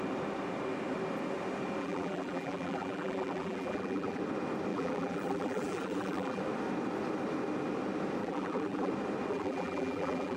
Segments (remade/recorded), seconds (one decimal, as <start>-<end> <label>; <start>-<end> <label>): 0.0-1.8 recorded; 1.8-4.2 remade; 4.2-4.7 recorded; 4.7-6.4 remade; 6.4-8.2 recorded; 8.2-8.9 remade; 8.9-9.3 recorded; 9.3-10.4 remade